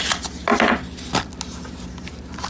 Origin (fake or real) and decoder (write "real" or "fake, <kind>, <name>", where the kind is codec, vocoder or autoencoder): real